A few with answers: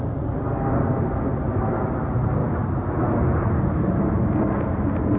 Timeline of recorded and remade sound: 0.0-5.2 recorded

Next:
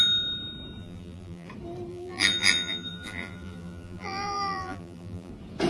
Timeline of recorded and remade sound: 0.0-0.8 recorded; 0.8-1.5 remade; 1.5-1.9 recorded; 1.9-5.3 remade; 5.3-5.7 recorded

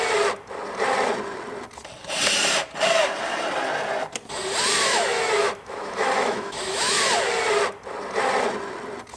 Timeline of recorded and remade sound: 0.0-4.9 recorded; 4.9-7.0 remade; 7.0-9.2 recorded

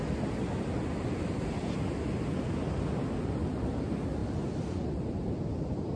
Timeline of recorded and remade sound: 0.0-6.0 recorded

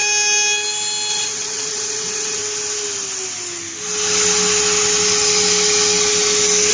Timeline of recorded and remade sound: 0.0-1.1 recorded; 1.1-2.4 remade; 2.4-6.7 recorded